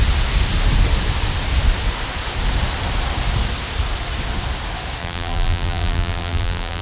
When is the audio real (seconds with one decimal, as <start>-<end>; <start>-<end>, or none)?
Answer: 0.0-5.0